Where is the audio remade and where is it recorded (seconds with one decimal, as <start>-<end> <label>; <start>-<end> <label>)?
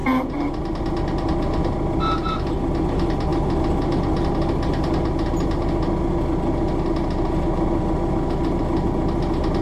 0.0-9.6 recorded